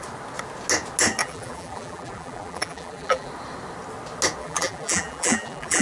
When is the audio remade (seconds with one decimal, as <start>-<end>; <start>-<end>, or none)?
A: 1.2-3.3; 4.4-5.8